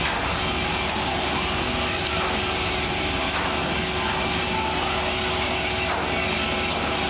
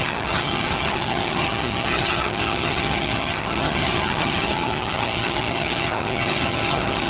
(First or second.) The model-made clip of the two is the second